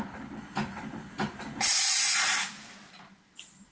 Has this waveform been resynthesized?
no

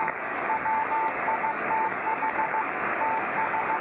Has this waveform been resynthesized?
yes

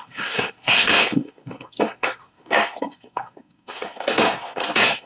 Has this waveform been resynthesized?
yes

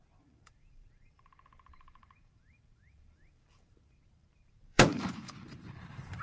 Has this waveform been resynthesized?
yes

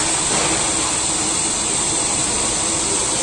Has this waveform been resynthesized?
no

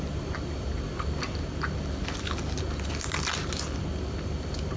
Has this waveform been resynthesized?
no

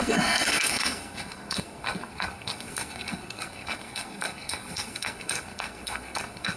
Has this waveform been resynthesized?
yes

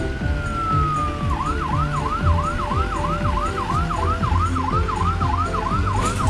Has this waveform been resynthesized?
no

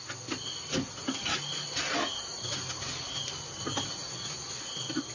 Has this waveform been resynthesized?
no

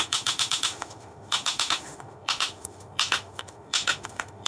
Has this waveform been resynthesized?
yes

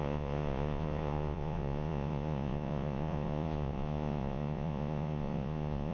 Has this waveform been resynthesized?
yes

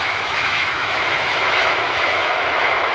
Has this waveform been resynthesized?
yes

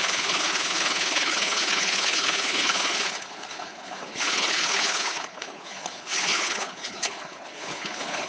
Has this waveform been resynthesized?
yes